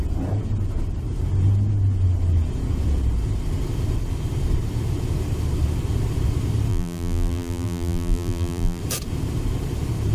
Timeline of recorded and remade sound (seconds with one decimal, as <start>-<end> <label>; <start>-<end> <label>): 0.0-6.7 recorded; 6.7-8.8 remade; 8.8-10.1 recorded